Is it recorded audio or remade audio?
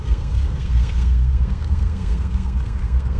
remade